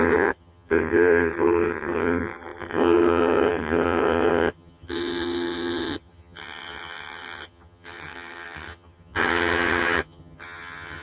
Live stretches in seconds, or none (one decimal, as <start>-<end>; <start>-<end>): none